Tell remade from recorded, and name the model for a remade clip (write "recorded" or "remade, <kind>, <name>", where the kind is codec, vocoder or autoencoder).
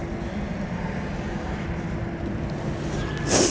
recorded